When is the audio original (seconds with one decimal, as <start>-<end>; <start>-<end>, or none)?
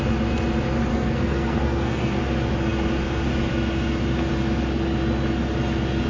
0.0-0.9; 2.2-6.1